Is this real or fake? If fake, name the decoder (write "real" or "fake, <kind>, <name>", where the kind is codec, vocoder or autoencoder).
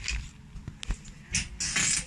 real